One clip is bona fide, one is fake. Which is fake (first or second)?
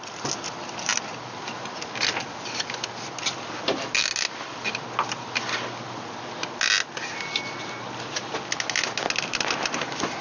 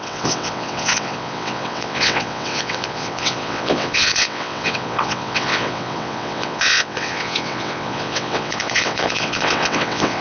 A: second